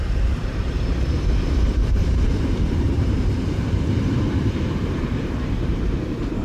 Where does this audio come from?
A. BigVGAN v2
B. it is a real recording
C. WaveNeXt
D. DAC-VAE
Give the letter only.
A